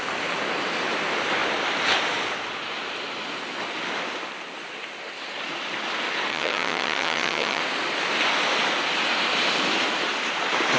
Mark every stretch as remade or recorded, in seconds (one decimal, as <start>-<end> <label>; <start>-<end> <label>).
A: 0.0-6.3 recorded; 6.3-7.6 remade; 7.6-10.8 recorded